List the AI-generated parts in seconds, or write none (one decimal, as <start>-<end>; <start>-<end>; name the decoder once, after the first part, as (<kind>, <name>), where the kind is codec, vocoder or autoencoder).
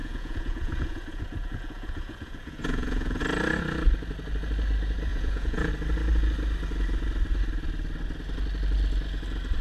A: 0.0-3.2 (vocoder, Vocos); 5.1-5.7